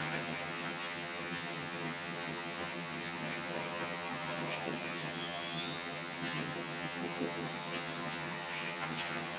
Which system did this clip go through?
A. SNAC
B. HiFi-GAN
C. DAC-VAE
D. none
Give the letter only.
B